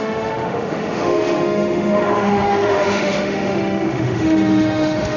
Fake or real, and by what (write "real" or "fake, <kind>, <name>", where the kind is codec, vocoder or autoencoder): fake, autoencoder, DAC-VAE